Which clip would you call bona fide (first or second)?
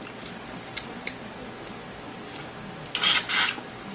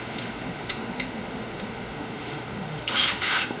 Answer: first